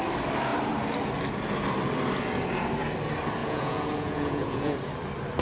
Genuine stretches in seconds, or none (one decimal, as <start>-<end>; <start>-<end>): 0.0-3.4; 4.8-5.4